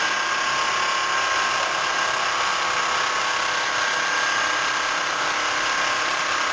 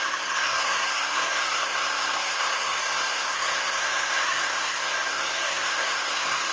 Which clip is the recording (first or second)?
first